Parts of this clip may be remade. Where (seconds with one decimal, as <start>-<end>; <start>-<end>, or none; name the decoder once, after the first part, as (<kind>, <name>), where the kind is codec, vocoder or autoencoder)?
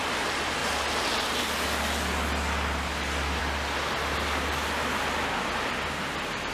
none